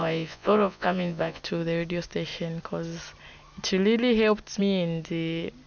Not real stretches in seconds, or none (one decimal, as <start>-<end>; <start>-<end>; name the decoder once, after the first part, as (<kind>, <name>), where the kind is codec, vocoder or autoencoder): 0.0-1.4 (vocoder, Vocos)

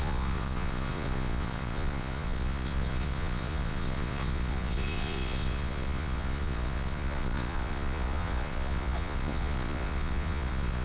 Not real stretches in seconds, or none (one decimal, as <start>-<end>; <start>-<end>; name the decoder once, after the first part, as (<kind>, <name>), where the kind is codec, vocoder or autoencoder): 0.0-10.8 (vocoder, Vocos)

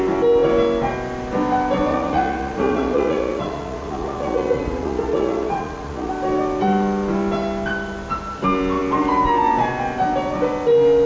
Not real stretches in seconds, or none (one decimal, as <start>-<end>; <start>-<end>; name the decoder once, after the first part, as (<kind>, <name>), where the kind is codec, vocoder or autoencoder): 1.9-6.1 (vocoder, Vocos)

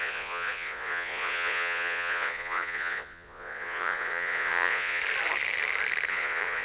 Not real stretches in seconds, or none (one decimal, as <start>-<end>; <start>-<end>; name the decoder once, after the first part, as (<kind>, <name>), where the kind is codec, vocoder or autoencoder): 0.0-5.0 (vocoder, Vocos); 6.1-6.6

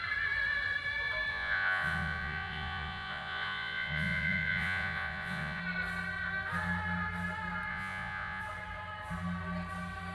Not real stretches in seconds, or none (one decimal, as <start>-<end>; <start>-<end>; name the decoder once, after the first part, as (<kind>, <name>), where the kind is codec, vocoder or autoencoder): 1.3-5.6 (vocoder, Vocos); 7.7-8.4

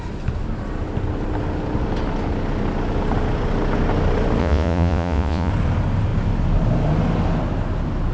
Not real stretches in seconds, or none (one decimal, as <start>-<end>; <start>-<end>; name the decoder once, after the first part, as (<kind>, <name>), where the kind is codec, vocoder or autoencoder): 4.4-5.5 (vocoder, Vocos)

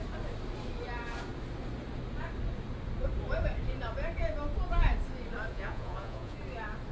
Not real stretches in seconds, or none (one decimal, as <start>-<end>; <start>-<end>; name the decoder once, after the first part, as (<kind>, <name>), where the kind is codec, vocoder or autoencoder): 5.5-6.4 (vocoder, Vocos)